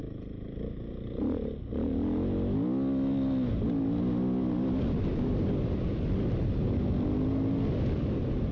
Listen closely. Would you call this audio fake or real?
real